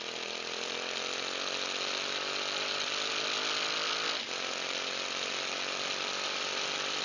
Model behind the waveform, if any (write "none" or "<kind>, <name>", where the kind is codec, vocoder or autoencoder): none